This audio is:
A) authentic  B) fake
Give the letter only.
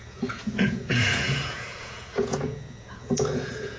B